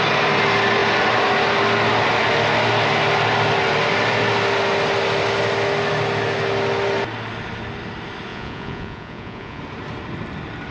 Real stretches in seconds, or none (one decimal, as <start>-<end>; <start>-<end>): 0.0-8.3; 9.6-10.7